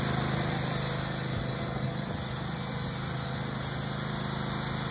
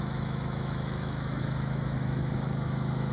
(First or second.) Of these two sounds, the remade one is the second